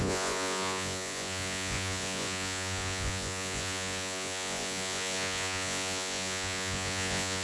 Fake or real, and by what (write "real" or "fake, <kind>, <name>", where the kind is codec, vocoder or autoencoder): fake, vocoder, Vocos